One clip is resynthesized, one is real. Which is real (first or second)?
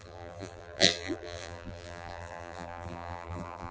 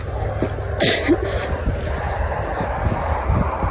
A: second